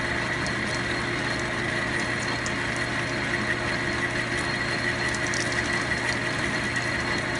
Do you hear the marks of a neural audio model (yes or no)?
no